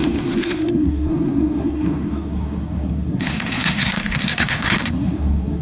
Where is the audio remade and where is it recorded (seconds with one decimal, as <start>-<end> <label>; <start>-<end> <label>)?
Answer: 0.0-5.6 remade